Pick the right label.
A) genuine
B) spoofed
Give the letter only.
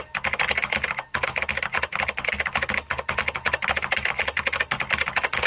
A